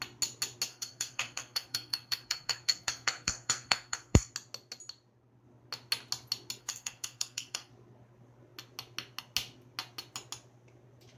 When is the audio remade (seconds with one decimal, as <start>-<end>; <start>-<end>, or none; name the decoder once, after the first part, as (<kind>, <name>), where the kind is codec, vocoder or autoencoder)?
0.7-4.3 (codec, SNAC); 6.6-7.7